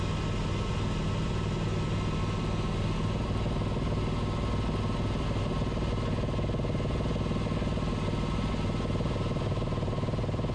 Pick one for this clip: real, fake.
real